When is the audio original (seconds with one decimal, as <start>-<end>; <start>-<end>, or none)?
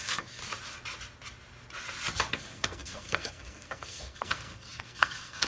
0.4-2.3